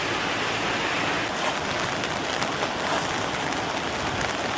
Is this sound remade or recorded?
recorded